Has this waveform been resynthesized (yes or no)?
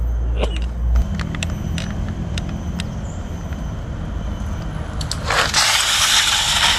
no